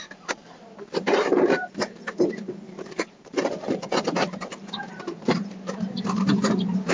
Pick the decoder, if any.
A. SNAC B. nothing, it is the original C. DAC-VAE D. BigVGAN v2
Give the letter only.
D